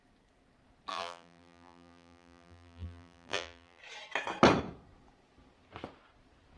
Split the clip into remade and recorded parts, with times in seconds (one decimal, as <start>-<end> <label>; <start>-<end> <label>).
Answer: 0.0-0.9 recorded; 0.9-3.8 remade; 3.8-6.6 recorded